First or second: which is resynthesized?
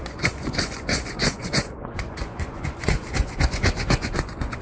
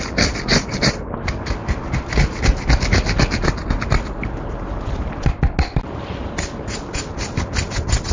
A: first